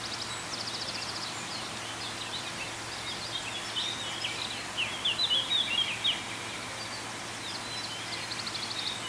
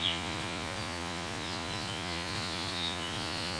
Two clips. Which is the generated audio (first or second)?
second